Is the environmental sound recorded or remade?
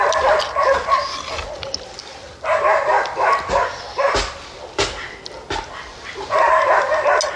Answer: recorded